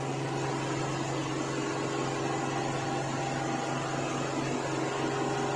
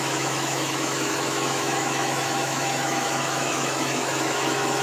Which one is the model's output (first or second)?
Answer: second